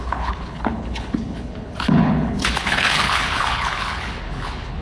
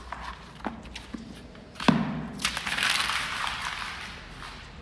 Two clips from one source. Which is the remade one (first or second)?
first